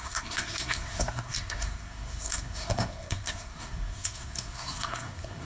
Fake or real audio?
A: fake